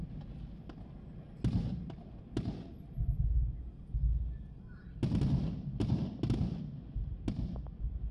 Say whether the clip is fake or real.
real